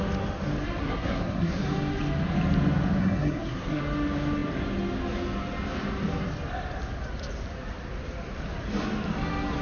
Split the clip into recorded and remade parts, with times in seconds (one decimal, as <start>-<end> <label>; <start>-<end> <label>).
0.0-0.8 recorded; 0.8-1.6 remade; 1.6-3.0 recorded; 3.0-3.8 remade; 3.8-9.6 recorded